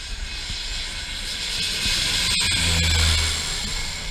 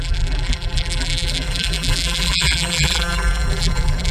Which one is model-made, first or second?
second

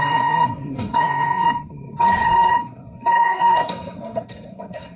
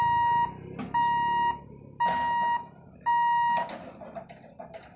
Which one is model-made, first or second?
first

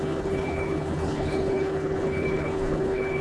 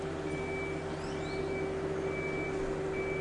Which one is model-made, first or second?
first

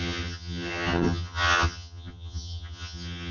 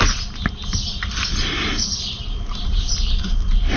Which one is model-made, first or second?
first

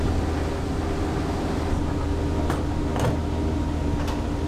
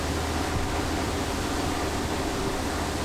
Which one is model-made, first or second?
second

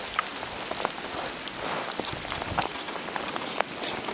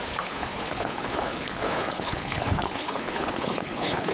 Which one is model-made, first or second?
second